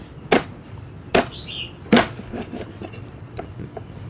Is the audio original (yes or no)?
yes